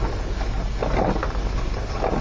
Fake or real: real